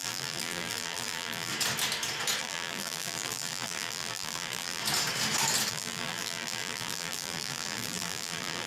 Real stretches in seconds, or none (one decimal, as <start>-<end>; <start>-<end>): 1.5-2.4; 4.8-5.7